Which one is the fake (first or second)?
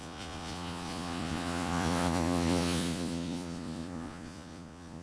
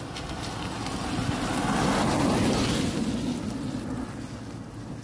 first